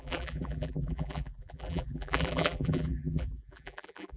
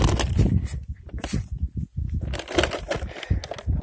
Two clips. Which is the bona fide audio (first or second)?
second